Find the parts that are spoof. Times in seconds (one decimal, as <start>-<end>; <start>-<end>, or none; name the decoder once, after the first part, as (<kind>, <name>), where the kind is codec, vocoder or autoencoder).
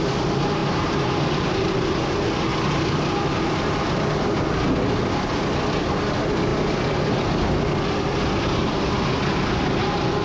none